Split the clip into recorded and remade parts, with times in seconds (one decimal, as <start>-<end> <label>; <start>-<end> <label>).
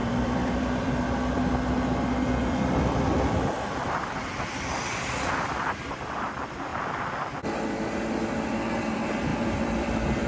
0.0-0.9 remade; 0.9-2.4 recorded; 2.4-5.3 remade; 5.3-9.3 recorded; 9.3-10.3 remade